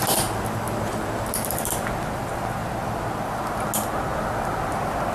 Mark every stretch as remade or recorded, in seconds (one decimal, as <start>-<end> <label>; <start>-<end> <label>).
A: 0.0-5.1 recorded